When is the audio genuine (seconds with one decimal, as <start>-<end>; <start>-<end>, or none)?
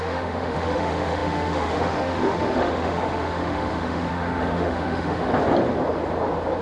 5.3-6.6